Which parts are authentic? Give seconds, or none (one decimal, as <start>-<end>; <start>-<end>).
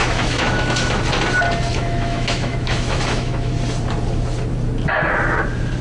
1.0-1.7; 3.5-5.8